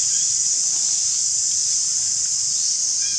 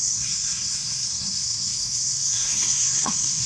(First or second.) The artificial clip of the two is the second